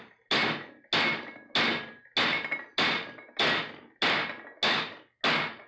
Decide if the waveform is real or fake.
real